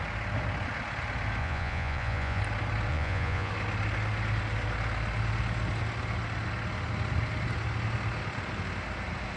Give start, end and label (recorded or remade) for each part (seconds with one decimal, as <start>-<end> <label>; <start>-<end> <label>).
0.0-1.4 recorded; 1.4-2.4 remade; 2.4-2.9 recorded; 2.9-3.5 remade; 3.5-9.4 recorded